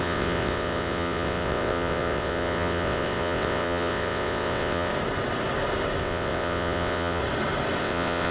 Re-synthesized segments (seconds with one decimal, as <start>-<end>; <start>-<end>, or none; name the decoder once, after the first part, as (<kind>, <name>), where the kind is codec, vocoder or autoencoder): 0.0-4.9 (vocoder, WaveNeXt); 6.0-7.2; 7.8-8.3